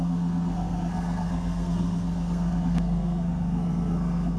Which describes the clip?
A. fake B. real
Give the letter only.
A